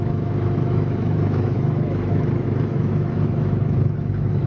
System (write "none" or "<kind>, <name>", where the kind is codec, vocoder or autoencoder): autoencoder, DAC-VAE